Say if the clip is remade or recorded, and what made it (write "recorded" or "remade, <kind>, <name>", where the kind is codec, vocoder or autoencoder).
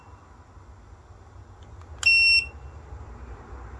recorded